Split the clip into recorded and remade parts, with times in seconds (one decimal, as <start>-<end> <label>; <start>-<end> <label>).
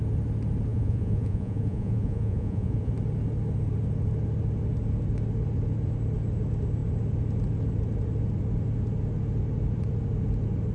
0.0-0.7 recorded; 0.7-2.9 remade; 2.9-10.7 recorded